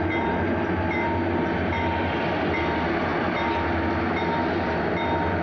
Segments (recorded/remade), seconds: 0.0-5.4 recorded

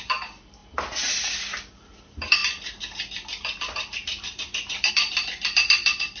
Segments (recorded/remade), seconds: 0.0-0.6 remade; 0.6-1.7 recorded; 1.7-6.2 remade